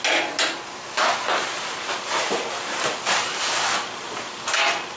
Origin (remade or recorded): recorded